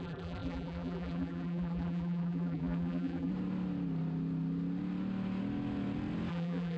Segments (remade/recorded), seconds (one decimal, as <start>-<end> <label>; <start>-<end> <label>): 0.0-3.3 remade; 3.3-6.3 recorded; 6.3-6.8 remade